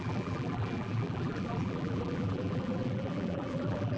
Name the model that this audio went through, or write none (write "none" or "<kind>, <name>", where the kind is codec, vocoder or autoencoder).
vocoder, BigVGAN v2